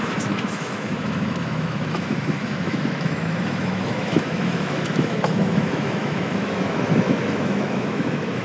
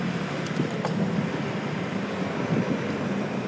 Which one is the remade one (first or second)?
first